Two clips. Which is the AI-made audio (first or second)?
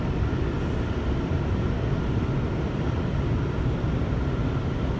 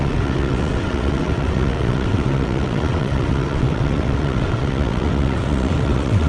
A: second